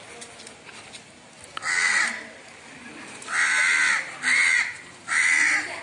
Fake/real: real